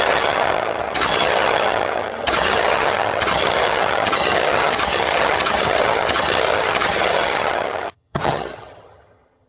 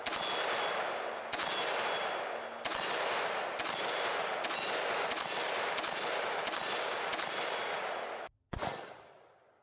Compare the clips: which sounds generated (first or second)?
first